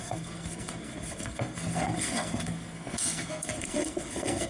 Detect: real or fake fake